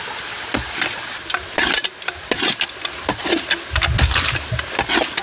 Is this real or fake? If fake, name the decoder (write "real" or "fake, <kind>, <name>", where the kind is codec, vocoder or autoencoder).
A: real